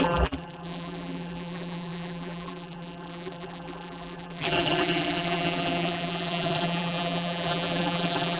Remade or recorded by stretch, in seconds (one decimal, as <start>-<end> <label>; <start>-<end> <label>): 0.0-8.4 remade